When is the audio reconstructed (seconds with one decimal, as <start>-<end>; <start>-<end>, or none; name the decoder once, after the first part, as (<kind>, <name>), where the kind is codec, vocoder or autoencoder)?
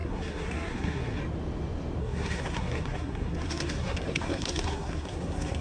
0.0-1.2 (codec, SNAC); 2.0-5.6